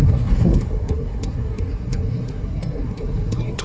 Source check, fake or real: fake